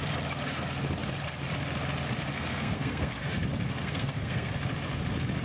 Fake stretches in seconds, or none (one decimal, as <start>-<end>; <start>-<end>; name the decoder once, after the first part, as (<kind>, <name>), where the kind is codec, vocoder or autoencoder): 2.3-3.3 (codec, SNAC); 3.8-4.5